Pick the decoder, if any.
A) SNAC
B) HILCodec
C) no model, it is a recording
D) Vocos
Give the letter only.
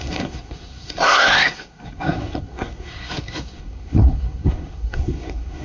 A